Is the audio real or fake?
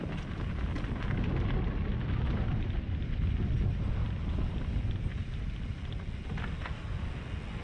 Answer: real